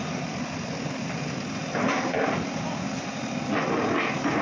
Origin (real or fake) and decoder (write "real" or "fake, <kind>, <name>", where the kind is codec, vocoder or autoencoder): fake, vocoder, BigVGAN v2